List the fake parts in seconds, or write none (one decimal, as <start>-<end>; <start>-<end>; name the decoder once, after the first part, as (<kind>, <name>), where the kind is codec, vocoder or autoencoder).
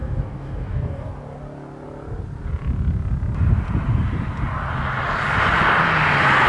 0.0-1.1 (codec, DAC)